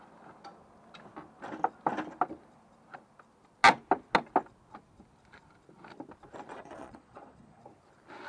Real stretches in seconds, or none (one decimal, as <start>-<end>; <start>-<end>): 0.0-6.5; 7.6-8.3